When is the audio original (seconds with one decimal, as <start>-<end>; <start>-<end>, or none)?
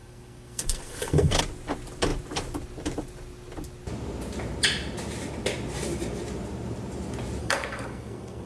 1.4-7.4